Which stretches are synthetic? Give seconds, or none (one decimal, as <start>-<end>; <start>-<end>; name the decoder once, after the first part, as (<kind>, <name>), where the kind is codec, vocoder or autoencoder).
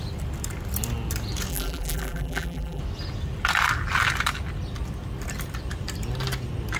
1.5-2.8 (vocoder, BigVGAN v2)